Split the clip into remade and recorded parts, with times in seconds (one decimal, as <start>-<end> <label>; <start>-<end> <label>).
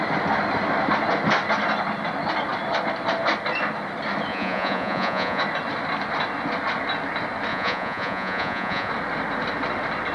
0.0-4.3 recorded; 4.3-5.4 remade; 5.4-7.5 recorded; 7.5-8.9 remade; 8.9-10.1 recorded